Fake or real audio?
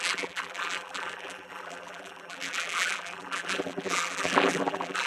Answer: fake